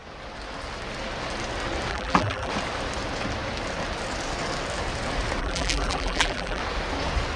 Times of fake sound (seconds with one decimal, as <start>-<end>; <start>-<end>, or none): 1.9-2.5; 5.4-6.6